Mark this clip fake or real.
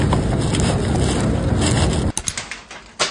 real